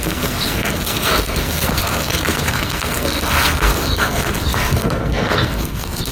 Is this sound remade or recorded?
remade